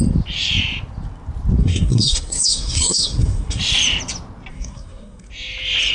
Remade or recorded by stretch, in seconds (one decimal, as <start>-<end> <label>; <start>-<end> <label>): 0.0-1.6 recorded; 1.6-3.6 remade; 3.6-4.5 recorded; 4.5-5.3 remade; 5.3-5.9 recorded

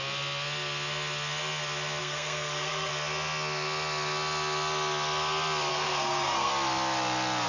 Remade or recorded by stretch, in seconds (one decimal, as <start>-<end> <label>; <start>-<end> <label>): 0.0-2.0 recorded; 2.0-2.9 remade; 2.9-5.7 recorded; 5.7-6.5 remade; 6.5-7.5 recorded

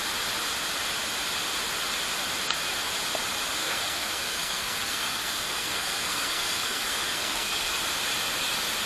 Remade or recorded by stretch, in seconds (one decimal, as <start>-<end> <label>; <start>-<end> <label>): 0.0-3.6 recorded; 3.6-7.8 remade; 7.8-8.9 recorded